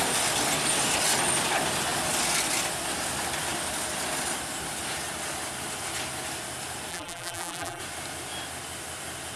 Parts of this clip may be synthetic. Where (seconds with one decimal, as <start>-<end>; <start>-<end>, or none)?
6.9-7.8